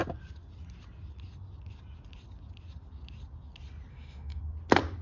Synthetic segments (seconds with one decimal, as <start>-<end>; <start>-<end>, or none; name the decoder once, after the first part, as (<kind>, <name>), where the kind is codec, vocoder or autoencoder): 3.9-4.4 (autoencoder, DAC-VAE)